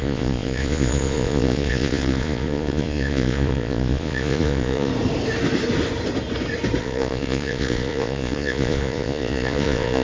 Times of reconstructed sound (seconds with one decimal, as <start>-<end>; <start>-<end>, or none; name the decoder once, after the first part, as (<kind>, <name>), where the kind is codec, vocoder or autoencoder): 0.0-4.9 (vocoder, Vocos); 6.8-10.0